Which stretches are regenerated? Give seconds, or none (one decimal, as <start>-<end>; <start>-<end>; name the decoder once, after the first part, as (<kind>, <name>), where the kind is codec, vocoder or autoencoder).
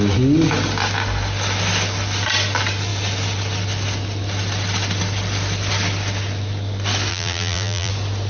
7.1-7.9 (vocoder, BigVGAN v2)